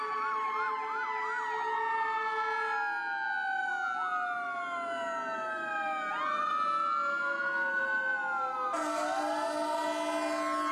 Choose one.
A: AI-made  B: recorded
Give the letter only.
B